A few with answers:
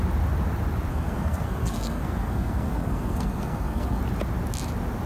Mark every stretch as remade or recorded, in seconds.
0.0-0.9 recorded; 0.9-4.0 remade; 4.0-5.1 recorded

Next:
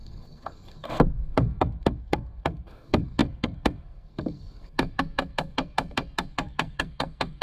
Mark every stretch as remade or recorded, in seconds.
0.0-7.4 remade

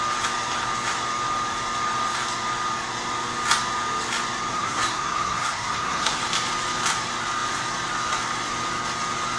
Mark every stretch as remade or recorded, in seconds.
0.0-4.5 recorded; 4.5-6.2 remade; 6.2-9.4 recorded

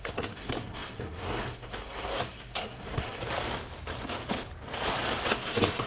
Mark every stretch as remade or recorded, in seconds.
0.0-3.2 remade; 3.2-5.3 recorded; 5.3-5.9 remade

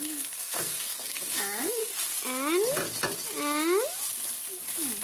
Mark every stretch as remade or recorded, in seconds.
0.0-1.8 remade; 1.8-5.0 recorded

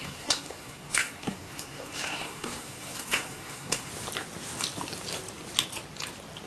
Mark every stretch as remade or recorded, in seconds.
0.0-3.9 remade; 3.9-6.5 recorded

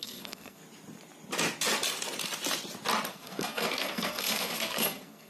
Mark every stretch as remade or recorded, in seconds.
0.0-0.6 remade; 0.6-3.1 recorded; 3.1-5.3 remade